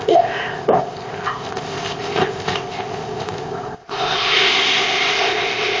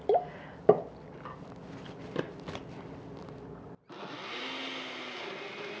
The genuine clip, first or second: second